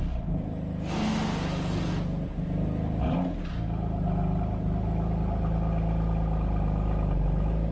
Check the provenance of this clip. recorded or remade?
recorded